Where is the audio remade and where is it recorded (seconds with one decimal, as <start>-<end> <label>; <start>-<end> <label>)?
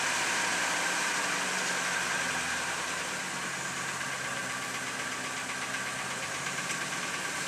0.0-7.5 recorded